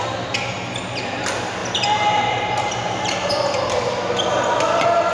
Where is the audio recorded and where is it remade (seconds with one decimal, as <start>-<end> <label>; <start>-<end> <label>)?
0.0-1.6 recorded; 1.6-3.3 remade; 3.3-5.1 recorded